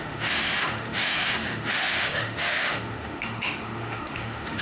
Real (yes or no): no